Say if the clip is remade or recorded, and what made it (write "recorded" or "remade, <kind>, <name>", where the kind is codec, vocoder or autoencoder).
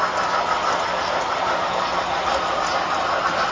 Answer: recorded